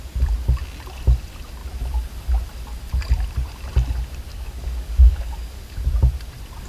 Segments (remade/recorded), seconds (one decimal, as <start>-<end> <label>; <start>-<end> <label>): 0.0-4.3 recorded; 4.3-5.8 remade; 5.8-6.7 recorded